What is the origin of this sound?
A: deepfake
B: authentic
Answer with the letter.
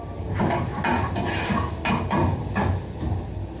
B